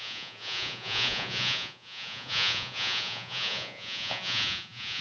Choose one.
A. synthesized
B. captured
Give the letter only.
A